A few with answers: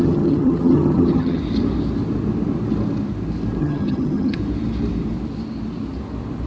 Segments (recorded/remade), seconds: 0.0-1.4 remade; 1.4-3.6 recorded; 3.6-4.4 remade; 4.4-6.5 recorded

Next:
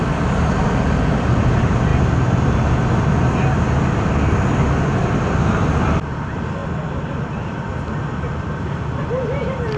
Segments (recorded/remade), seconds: 0.0-9.8 recorded